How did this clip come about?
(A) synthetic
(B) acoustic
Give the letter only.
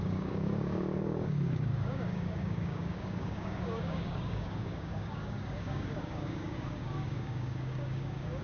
A